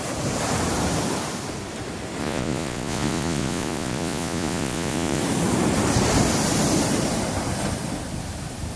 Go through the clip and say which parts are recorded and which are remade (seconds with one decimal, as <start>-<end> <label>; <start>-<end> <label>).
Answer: 0.0-2.2 recorded; 2.2-5.2 remade; 5.2-8.8 recorded